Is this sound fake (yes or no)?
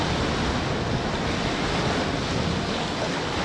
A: no